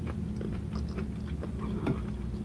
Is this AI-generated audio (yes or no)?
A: no